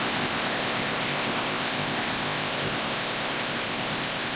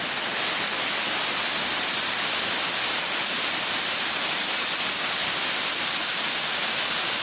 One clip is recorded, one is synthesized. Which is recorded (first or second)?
second